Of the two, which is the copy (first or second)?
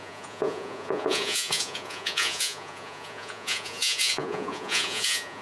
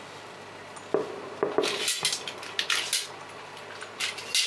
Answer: first